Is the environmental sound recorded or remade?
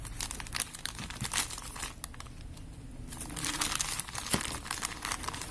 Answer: recorded